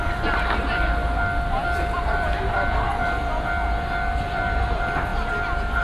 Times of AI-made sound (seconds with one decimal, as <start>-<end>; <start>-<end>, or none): 0.0-1.0; 4.2-5.1